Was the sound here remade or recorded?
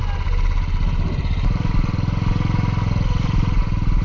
recorded